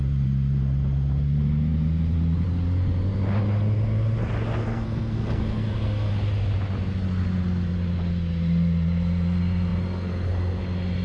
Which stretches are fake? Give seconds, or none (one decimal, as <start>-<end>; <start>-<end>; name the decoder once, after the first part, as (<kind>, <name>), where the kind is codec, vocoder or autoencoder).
4.6-6.1 (codec, SNAC)